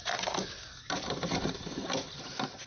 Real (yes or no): yes